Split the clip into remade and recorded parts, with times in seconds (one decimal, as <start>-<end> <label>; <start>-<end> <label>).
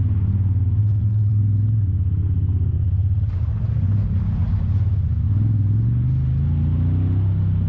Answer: 0.0-0.8 recorded; 0.8-1.4 remade; 1.4-7.7 recorded